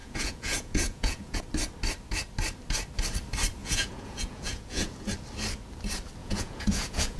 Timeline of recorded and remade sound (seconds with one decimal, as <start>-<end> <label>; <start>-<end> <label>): 0.0-1.4 remade; 1.4-3.6 recorded; 3.6-5.1 remade; 5.1-6.2 recorded; 6.2-7.2 remade